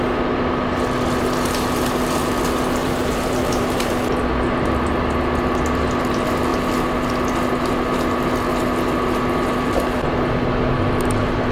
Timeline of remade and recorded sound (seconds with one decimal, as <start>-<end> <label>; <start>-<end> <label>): 0.0-2.8 recorded; 2.8-3.9 remade; 3.9-11.5 recorded